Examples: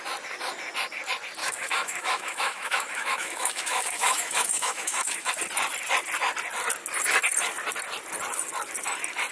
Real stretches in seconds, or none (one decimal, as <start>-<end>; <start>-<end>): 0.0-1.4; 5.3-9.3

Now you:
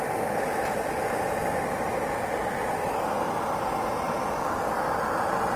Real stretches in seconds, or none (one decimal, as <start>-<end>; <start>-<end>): 0.0-5.6

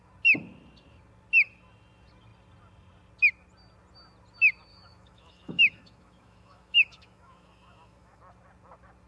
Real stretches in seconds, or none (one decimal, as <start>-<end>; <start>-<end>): 0.0-4.7; 8.2-9.1

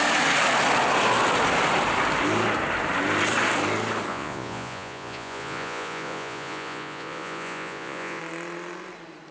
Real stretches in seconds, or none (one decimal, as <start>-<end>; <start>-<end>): 0.0-4.1; 8.2-9.3

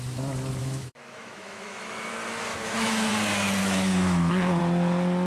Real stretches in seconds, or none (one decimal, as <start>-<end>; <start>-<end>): 0.0-0.6; 2.1-2.5; 3.1-3.6; 4.6-5.3

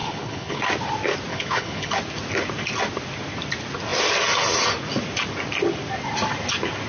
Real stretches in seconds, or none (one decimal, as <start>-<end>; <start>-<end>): 0.6-1.3; 1.9-6.9